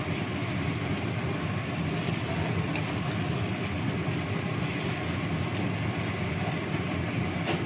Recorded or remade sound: recorded